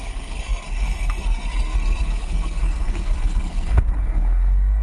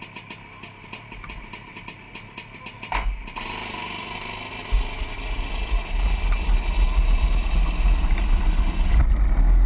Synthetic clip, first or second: first